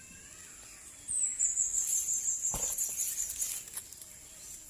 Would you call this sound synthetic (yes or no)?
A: no